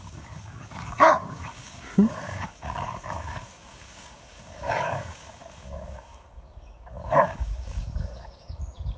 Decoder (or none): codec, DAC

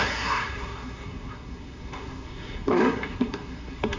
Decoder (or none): codec, SNAC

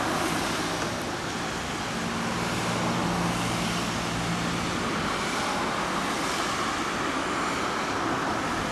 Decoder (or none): none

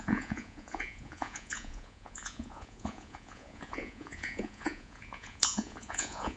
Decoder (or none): vocoder, Vocos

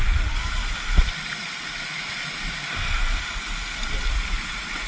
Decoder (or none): none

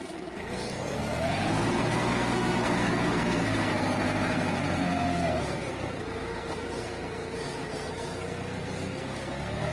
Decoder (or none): codec, SNAC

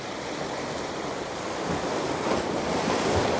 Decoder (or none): none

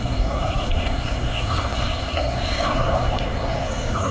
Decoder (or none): codec, SNAC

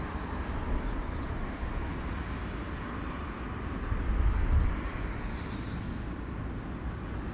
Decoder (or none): none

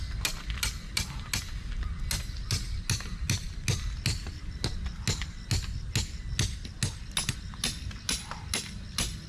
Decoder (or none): none